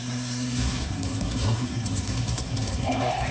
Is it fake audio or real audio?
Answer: fake